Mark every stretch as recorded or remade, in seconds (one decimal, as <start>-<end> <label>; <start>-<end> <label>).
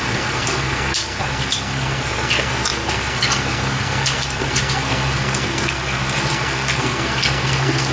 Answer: 0.0-7.9 remade